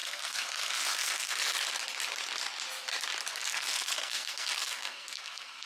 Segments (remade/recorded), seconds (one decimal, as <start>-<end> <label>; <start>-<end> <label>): 0.0-1.5 remade; 1.5-3.3 recorded; 3.3-5.7 remade